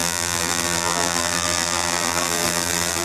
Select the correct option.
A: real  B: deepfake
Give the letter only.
B